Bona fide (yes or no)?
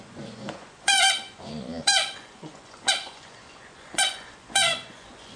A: no